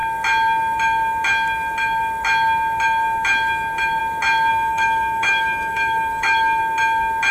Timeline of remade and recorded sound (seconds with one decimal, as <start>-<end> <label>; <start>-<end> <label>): 0.0-4.5 recorded; 4.5-6.6 remade; 6.6-7.3 recorded